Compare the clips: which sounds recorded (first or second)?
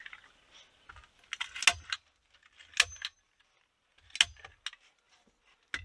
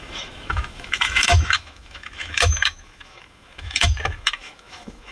first